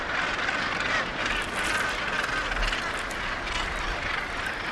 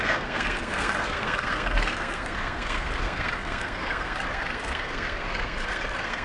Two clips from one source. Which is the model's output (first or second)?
second